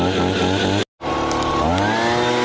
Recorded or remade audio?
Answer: recorded